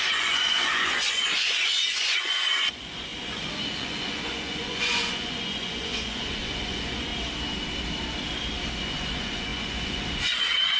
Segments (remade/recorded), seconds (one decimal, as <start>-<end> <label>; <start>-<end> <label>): 0.0-7.1 remade; 7.1-8.8 recorded; 8.8-10.8 remade